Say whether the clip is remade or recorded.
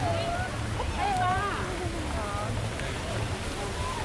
recorded